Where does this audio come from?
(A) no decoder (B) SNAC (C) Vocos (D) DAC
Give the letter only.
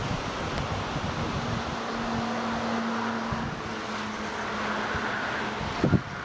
A